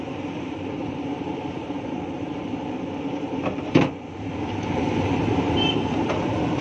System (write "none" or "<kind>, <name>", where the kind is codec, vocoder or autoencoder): vocoder, BigVGAN v2